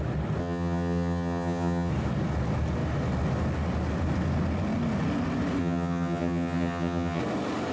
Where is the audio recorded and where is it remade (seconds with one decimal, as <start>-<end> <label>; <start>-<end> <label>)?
0.0-0.4 recorded; 0.4-1.9 remade; 1.9-5.6 recorded; 5.6-7.2 remade; 7.2-7.7 recorded